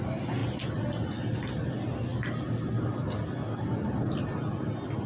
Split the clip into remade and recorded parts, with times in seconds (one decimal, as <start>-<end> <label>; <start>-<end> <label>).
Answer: 0.0-5.1 recorded